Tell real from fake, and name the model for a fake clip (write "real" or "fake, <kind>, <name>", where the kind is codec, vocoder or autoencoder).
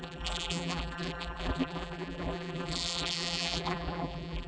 fake, vocoder, BigVGAN v2